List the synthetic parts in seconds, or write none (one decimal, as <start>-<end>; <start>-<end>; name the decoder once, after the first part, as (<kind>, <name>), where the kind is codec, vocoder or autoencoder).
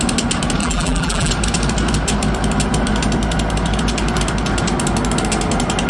0.6-1.3 (vocoder, BigVGAN v2)